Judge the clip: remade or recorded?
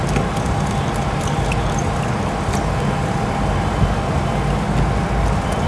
recorded